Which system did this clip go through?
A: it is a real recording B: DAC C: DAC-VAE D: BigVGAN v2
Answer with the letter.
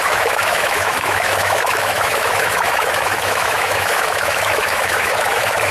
C